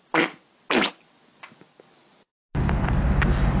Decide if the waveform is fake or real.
real